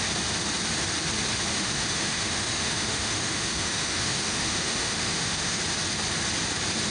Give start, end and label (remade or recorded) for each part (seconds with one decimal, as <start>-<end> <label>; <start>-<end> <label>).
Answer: 0.0-1.5 recorded; 1.5-5.6 remade; 5.6-6.9 recorded

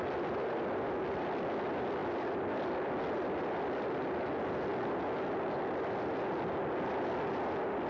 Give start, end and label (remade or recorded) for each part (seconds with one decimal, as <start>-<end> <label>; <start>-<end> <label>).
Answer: 0.0-7.9 recorded

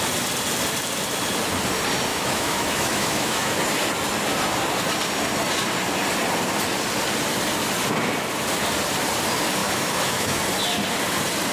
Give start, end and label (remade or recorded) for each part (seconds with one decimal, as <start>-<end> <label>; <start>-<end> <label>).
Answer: 0.0-2.1 recorded; 2.1-3.5 remade; 3.5-9.6 recorded; 9.6-10.4 remade; 10.4-11.5 recorded

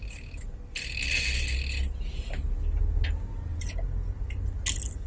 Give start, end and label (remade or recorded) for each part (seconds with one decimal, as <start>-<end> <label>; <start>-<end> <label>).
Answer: 0.0-5.1 recorded

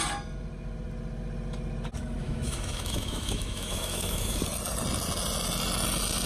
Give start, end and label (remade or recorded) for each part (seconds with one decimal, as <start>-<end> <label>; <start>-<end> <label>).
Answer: 0.0-2.2 recorded; 2.2-4.4 remade; 4.4-6.3 recorded